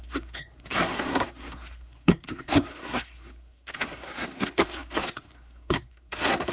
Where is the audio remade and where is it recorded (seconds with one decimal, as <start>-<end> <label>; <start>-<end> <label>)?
0.0-6.5 remade